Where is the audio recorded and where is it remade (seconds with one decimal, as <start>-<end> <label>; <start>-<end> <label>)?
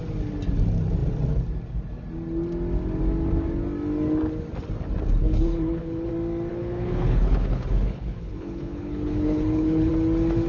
0.0-5.2 recorded; 5.2-6.1 remade; 6.1-6.5 recorded; 6.5-9.9 remade; 9.9-10.5 recorded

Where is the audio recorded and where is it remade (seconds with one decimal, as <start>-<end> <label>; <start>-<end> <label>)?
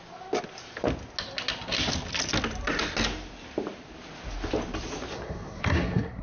0.0-5.1 recorded; 5.1-6.2 remade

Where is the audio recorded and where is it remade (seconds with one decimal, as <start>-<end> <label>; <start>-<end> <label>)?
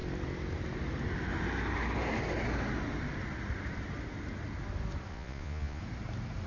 0.0-5.1 recorded; 5.1-5.8 remade; 5.8-6.5 recorded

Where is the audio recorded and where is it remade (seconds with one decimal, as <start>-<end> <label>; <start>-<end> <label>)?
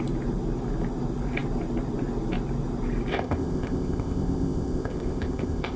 0.0-3.1 recorded; 3.1-5.8 remade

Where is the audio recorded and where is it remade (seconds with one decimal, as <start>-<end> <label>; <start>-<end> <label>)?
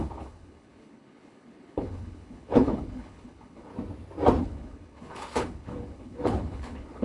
0.0-3.7 remade; 3.7-4.4 recorded; 4.4-7.0 remade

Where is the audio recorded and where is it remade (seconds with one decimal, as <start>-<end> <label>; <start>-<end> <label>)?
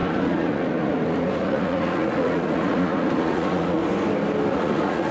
0.0-3.8 remade; 3.8-4.5 recorded; 4.5-5.1 remade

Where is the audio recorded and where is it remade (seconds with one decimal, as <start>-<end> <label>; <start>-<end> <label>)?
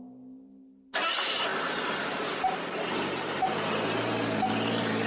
0.0-5.1 recorded